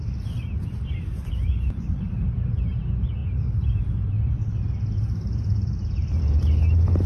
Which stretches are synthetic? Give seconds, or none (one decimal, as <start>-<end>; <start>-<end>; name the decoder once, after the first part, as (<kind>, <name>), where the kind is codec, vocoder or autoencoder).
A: 1.2-2.1 (vocoder, BigVGAN v2); 3.2-6.2